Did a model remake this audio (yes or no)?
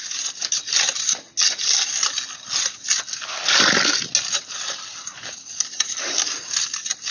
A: no